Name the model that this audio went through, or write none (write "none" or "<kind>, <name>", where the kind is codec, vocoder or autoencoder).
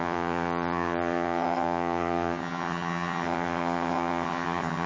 vocoder, HiFi-GAN